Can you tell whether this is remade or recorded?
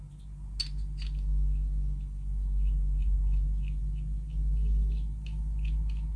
recorded